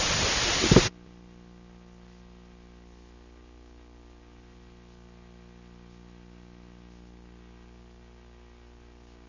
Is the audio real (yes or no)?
yes